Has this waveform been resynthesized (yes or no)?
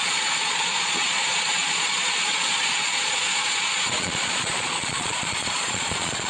yes